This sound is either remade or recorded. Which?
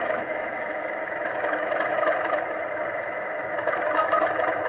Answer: remade